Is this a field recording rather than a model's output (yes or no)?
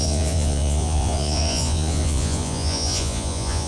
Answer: no